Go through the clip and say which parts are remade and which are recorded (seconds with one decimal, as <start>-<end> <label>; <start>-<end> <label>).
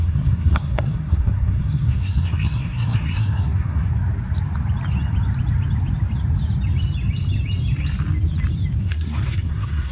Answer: 0.0-3.9 remade; 3.9-8.8 recorded; 8.8-9.9 remade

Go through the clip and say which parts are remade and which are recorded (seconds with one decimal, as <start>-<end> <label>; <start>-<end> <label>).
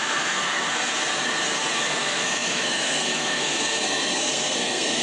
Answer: 0.0-0.9 remade; 0.9-1.8 recorded; 1.8-5.0 remade